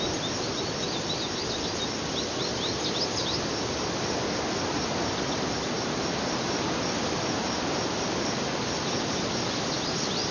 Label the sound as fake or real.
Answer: real